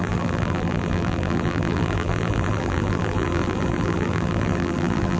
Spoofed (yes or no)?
yes